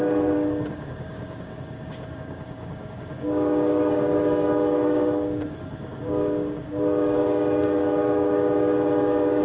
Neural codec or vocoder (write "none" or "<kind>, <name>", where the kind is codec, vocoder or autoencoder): codec, DAC